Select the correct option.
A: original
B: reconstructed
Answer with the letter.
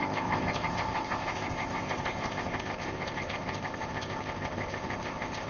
B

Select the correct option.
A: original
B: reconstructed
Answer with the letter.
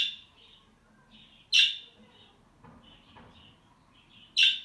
A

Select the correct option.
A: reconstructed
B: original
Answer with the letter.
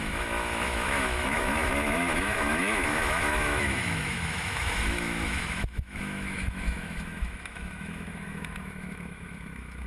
A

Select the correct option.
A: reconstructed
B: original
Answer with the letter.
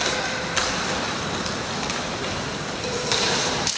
B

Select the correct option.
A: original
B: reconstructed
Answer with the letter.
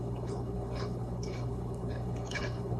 B